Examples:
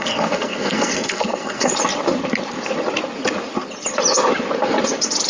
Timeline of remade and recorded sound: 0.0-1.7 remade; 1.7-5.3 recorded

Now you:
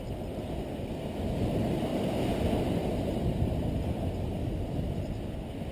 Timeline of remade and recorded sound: 0.0-1.9 recorded; 1.9-4.6 remade; 4.6-5.7 recorded

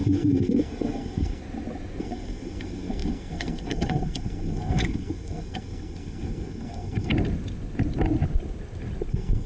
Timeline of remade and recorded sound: 0.0-1.4 remade; 1.4-2.0 recorded; 2.0-7.1 remade; 7.1-9.1 recorded; 9.1-9.5 remade

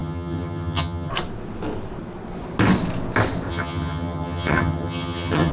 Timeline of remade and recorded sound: 0.0-1.1 remade; 1.1-3.5 recorded; 3.5-5.5 remade